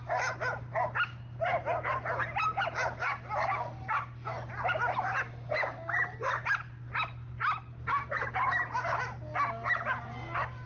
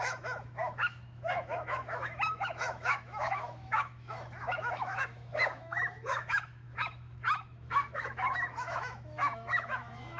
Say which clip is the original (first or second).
first